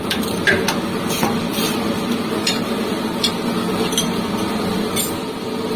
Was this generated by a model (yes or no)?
no